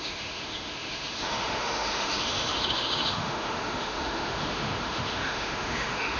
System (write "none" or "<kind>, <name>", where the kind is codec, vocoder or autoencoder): autoencoder, DAC-VAE